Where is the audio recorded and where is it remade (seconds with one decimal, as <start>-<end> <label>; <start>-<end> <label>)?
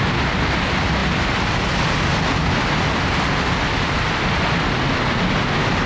0.0-5.9 recorded